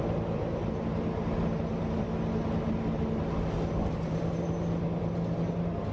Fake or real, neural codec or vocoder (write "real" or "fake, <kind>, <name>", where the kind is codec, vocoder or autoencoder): real